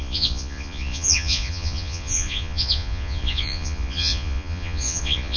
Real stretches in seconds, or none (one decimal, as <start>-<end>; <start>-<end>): none